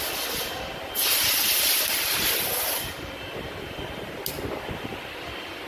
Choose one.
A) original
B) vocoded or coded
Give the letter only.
A